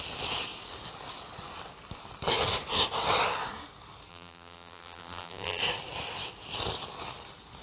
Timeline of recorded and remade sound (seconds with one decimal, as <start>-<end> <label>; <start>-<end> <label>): 0.0-4.1 recorded; 4.1-5.6 remade; 5.6-7.6 recorded